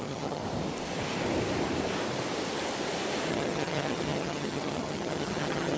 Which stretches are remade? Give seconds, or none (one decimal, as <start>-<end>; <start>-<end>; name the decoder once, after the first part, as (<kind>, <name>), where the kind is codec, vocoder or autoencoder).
0.0-0.4 (vocoder, HiFi-GAN); 3.3-5.8